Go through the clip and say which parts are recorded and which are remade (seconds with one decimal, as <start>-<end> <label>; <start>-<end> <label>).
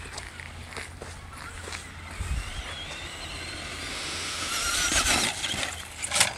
0.0-3.9 recorded; 3.9-4.5 remade; 4.5-6.4 recorded